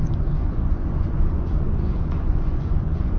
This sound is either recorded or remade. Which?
remade